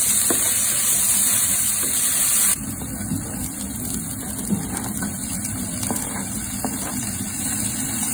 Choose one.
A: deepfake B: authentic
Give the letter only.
A